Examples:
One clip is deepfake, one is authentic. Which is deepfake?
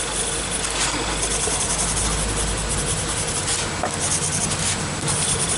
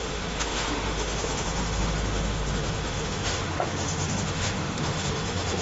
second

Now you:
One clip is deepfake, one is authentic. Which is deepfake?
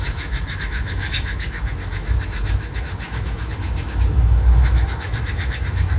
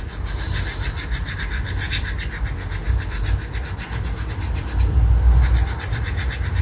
first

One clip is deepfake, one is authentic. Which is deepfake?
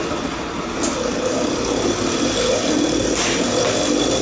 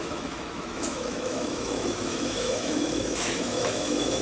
second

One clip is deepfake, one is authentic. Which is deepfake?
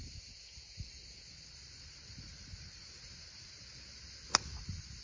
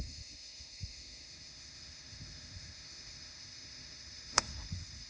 second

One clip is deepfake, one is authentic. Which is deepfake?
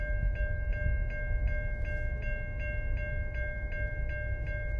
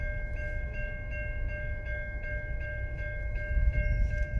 second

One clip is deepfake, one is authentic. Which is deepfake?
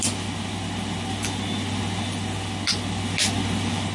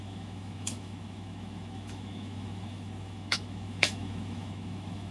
second